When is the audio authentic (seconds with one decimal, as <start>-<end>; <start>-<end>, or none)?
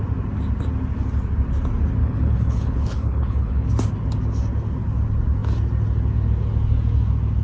0.0-2.0; 3.7-7.4